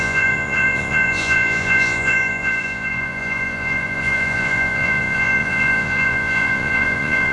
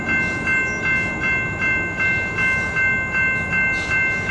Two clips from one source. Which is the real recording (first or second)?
second